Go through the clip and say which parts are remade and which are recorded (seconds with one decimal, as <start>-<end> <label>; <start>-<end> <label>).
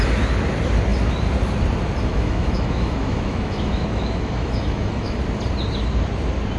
0.0-2.1 recorded; 2.1-5.2 remade; 5.2-6.6 recorded